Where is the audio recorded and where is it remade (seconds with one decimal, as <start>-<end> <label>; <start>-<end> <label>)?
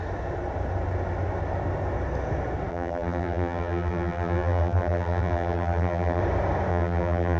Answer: 0.0-2.7 recorded; 2.7-6.2 remade; 6.2-6.7 recorded; 6.7-7.4 remade